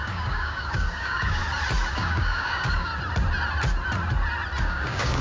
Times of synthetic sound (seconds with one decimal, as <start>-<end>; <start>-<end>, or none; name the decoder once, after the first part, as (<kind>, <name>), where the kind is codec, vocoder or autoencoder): 0.0-1.4 (codec, DAC); 1.9-2.9; 4.6-5.2